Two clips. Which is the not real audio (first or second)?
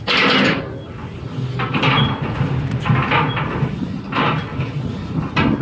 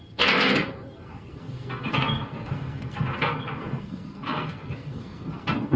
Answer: second